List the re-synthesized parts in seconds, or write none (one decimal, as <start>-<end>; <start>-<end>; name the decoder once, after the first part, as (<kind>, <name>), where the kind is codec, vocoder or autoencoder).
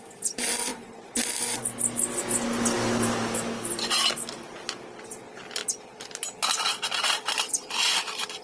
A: none